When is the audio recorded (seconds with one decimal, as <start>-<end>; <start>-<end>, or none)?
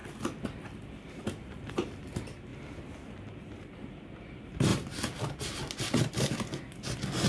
0.0-1.1; 2.5-3.3; 4.7-7.3